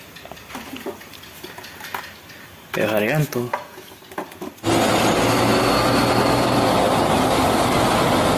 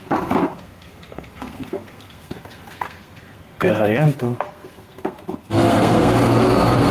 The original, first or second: first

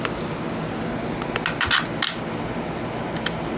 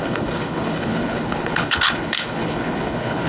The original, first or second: first